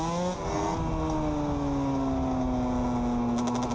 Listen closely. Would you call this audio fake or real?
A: real